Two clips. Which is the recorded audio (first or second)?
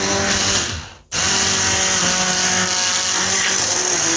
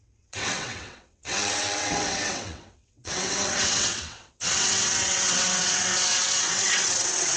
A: first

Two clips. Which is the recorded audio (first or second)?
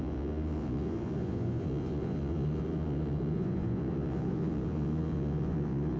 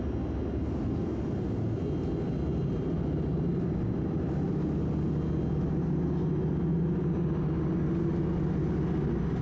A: second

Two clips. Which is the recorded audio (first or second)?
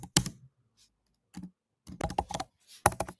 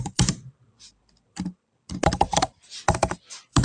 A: first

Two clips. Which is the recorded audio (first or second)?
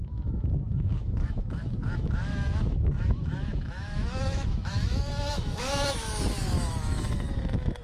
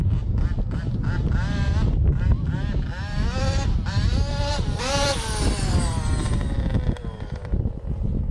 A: second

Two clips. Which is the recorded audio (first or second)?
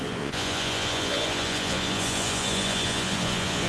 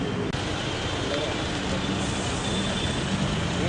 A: second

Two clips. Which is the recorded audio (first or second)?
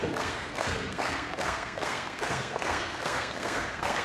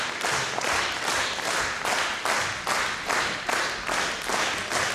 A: second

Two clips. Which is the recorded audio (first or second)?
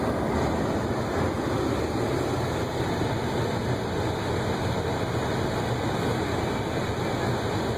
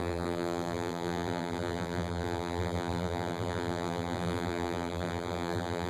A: first